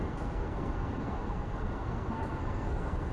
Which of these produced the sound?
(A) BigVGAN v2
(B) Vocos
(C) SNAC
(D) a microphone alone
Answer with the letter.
C